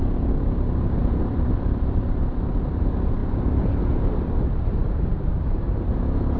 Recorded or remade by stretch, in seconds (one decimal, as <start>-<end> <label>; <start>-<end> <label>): 0.0-4.8 recorded; 4.8-5.8 remade; 5.8-6.4 recorded